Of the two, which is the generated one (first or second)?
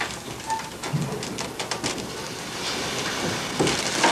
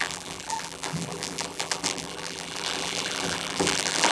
second